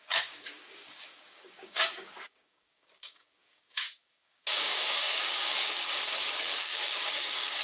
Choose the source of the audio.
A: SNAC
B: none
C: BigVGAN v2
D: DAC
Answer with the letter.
D